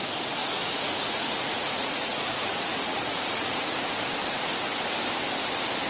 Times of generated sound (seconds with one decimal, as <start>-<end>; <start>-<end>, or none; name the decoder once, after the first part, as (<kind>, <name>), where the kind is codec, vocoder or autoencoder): 0.4-3.9 (vocoder, Vocos)